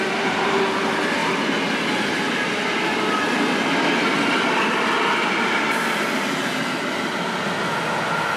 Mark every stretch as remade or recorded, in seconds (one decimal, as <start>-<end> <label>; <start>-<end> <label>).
0.0-8.4 recorded